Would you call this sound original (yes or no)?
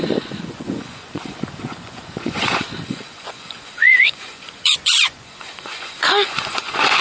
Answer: no